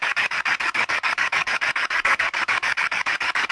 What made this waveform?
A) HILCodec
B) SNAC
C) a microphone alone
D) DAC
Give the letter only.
D